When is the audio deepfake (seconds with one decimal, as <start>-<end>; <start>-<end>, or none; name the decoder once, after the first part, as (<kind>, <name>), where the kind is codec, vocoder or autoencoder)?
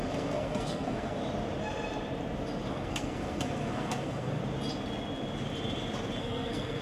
0.0-1.2 (codec, SNAC); 2.7-4.4; 6.2-6.8